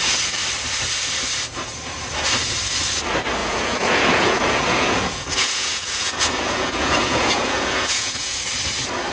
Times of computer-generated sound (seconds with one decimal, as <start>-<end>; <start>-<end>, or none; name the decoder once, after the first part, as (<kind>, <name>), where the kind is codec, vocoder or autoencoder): 3.4-8.4 (vocoder, Vocos)